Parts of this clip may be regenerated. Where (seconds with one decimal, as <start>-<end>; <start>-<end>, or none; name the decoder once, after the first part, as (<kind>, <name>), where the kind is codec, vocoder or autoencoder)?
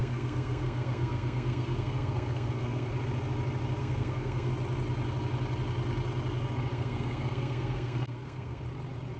0.0-2.9 (codec, SNAC); 3.8-4.5; 6.7-8.6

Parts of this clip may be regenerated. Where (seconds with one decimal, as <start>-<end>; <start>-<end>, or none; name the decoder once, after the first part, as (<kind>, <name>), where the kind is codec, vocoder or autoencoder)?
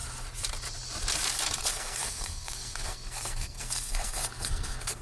1.6-5.0 (codec, SNAC)